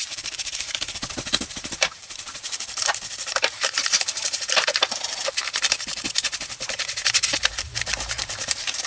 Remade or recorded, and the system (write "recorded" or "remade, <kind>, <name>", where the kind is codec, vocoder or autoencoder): remade, vocoder, BigVGAN v2